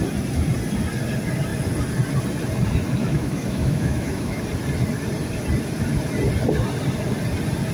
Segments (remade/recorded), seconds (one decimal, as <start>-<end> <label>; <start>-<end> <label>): 0.0-3.0 recorded; 3.0-4.4 remade; 4.4-7.7 recorded